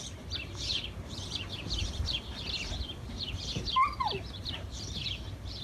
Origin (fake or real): fake